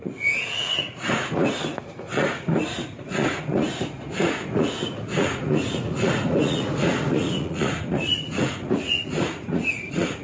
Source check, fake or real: fake